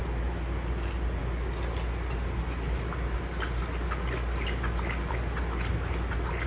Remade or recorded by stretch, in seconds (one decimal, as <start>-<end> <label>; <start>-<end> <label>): 0.0-6.5 recorded